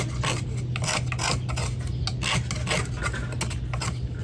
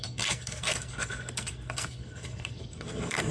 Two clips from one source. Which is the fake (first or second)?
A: second